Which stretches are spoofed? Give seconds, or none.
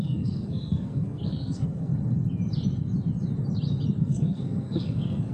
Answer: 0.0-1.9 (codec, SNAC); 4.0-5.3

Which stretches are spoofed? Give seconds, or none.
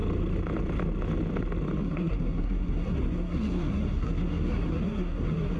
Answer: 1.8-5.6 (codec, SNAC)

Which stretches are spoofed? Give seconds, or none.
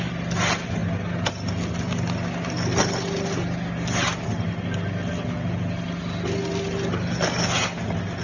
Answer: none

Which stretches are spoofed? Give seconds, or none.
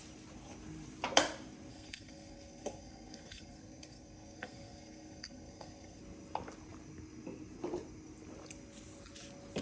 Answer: 1.7-6.0 (codec, SNAC)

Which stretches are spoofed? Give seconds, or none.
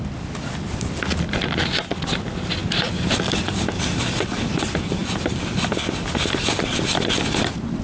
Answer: none